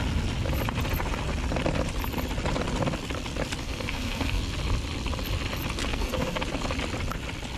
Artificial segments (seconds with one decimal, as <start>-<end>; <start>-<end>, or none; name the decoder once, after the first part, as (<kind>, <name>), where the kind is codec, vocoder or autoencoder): 3.6-4.4 (codec, SNAC); 5.9-6.4